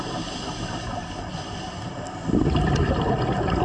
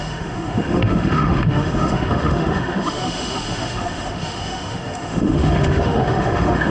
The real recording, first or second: first